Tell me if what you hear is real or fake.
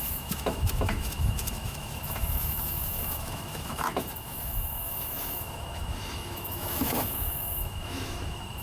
fake